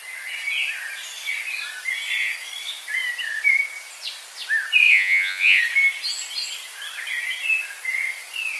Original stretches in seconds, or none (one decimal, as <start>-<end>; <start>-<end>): 0.0-4.9; 5.6-8.6